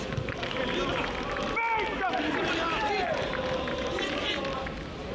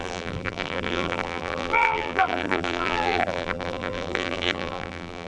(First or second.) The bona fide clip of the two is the first